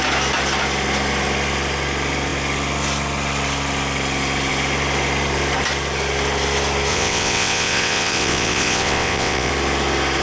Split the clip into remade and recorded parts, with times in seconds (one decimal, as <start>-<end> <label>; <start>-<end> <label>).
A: 0.0-6.9 recorded; 6.9-9.5 remade; 9.5-10.2 recorded